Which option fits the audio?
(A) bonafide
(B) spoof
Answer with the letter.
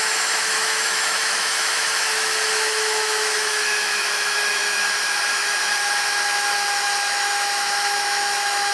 B